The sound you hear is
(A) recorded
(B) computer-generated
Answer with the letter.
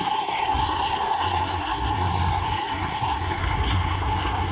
B